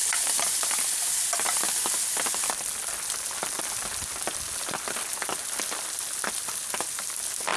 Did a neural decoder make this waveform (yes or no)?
no